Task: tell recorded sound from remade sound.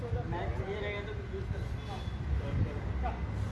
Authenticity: recorded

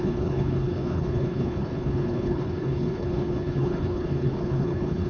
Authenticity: remade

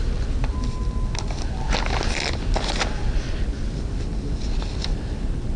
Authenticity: recorded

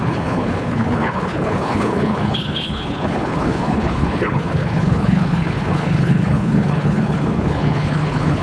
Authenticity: remade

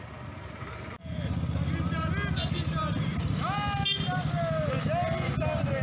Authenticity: recorded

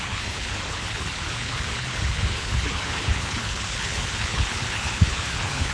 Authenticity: remade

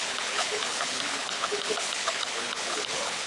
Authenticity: remade